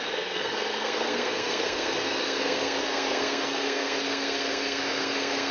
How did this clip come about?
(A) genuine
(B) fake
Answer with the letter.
B